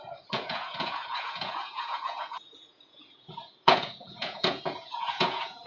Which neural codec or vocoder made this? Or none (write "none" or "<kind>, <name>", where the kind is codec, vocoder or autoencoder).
vocoder, Vocos